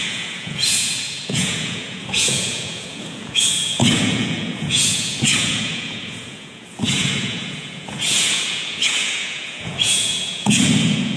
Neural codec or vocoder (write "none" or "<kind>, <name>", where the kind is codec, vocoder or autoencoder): vocoder, Vocos